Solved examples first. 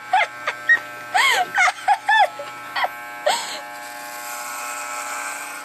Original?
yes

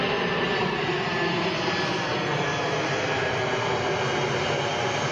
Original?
yes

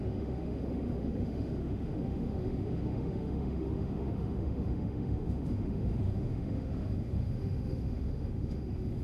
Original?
no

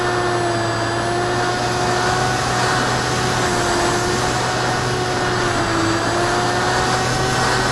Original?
yes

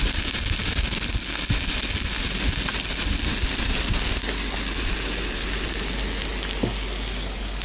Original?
yes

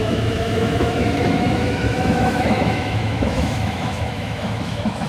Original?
no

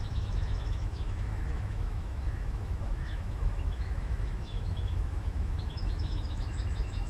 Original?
no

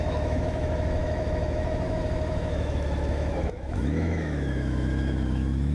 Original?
no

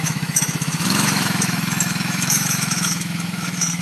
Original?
no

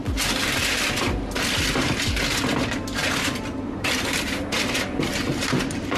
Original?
yes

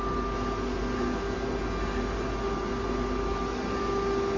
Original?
yes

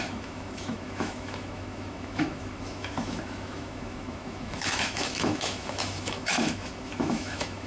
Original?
no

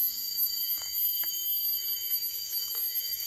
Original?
no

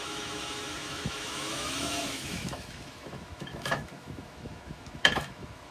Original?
no